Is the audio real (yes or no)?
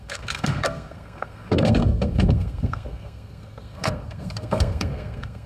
no